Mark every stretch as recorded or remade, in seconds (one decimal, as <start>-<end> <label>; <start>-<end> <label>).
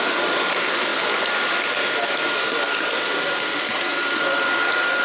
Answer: 0.0-5.0 recorded